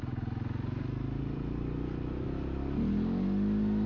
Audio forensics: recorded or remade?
recorded